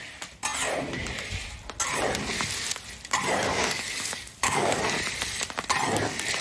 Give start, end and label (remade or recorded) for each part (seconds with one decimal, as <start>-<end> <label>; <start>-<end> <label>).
0.0-3.5 recorded; 3.5-4.8 remade; 4.8-6.4 recorded

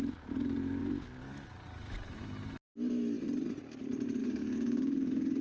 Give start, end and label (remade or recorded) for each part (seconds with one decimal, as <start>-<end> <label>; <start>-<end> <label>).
0.0-4.2 recorded; 4.2-5.4 remade

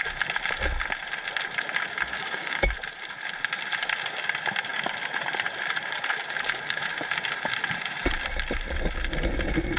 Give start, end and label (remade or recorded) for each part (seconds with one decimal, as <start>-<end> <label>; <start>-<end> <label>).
0.0-2.1 recorded; 2.1-2.7 remade; 2.7-9.8 recorded

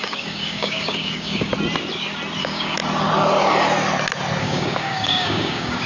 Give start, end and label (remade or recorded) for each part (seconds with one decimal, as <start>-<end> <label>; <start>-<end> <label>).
0.0-1.5 remade; 1.5-2.4 recorded; 2.4-2.8 remade; 2.8-4.4 recorded; 4.4-5.9 remade

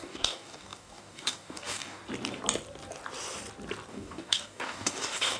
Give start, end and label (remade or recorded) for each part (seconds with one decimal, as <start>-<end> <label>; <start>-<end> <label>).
0.0-2.0 remade; 2.0-3.9 recorded; 3.9-5.4 remade

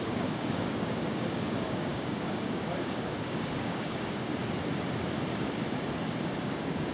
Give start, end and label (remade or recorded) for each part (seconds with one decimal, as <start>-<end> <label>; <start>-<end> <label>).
0.0-4.4 remade; 4.4-6.4 recorded; 6.4-6.9 remade

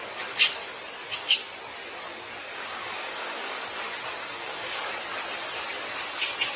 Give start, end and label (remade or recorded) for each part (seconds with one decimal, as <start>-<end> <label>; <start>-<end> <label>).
0.0-2.4 recorded; 2.4-3.6 remade; 3.6-4.2 recorded; 4.2-4.9 remade; 4.9-6.6 recorded